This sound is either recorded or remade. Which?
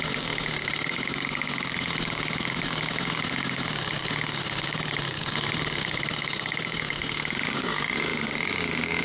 remade